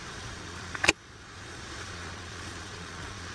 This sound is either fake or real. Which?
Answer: fake